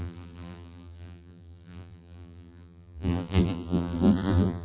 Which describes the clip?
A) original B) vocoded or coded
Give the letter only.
B